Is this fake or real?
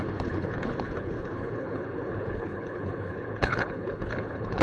fake